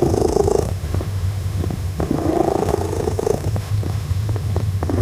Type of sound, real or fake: fake